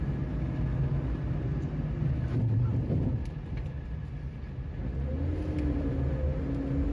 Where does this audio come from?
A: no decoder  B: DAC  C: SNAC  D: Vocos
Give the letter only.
A